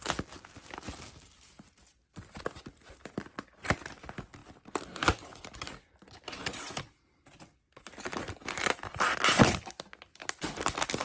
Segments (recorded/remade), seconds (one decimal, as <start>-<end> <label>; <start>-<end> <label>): 0.0-11.0 recorded